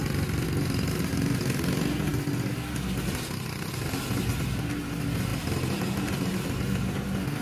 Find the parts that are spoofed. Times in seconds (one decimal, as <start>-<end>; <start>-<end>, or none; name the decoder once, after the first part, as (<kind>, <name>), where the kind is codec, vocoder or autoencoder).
none